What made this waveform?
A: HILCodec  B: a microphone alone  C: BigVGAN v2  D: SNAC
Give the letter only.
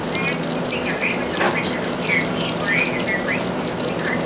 B